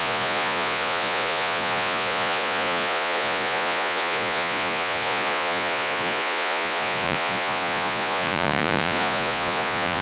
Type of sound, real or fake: fake